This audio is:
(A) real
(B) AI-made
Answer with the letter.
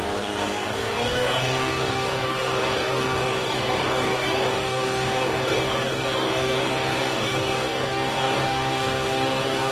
B